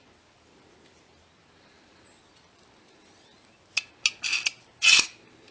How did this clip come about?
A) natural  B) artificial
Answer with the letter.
A